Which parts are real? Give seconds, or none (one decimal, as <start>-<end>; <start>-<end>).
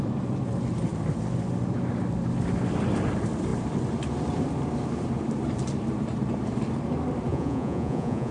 0.0-7.3